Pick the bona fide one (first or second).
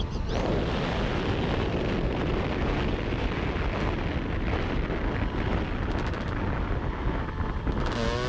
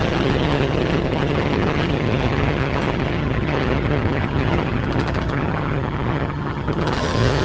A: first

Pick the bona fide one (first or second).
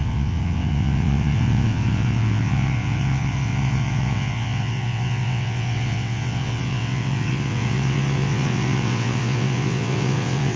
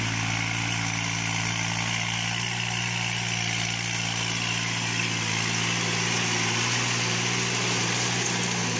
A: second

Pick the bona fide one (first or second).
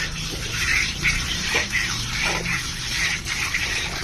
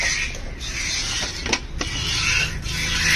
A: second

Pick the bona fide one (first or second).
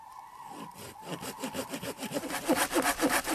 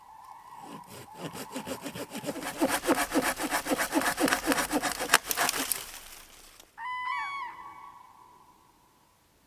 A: second